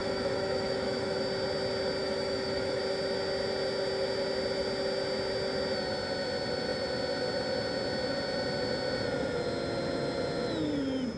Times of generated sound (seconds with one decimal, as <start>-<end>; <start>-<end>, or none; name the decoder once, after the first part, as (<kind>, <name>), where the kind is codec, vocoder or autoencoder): 0.0-1.2 (autoencoder, DAC-VAE); 2.0-2.8